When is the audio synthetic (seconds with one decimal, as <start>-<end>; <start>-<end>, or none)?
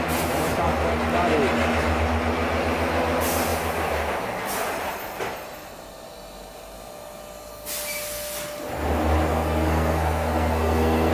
9.3-11.1